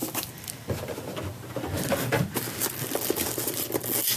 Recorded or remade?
recorded